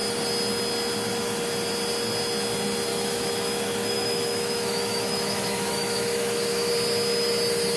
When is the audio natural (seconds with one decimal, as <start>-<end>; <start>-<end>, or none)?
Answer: 0.0-2.9; 6.7-7.8